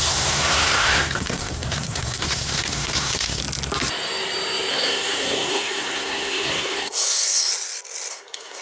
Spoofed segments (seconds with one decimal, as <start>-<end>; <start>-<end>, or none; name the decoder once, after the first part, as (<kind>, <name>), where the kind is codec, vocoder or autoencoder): 0.0-3.4 (codec, SNAC); 4.7-7.5; 8.1-8.6